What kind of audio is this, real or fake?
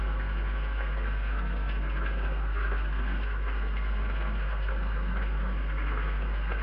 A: fake